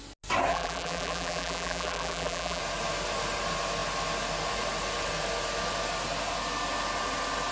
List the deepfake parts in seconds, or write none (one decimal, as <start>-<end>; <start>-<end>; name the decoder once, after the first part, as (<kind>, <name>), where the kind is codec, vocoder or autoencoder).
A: 0.5-2.6 (vocoder, BigVGAN v2)